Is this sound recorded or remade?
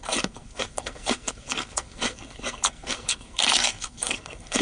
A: remade